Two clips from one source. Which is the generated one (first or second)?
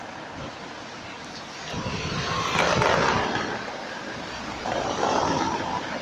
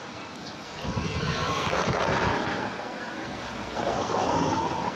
second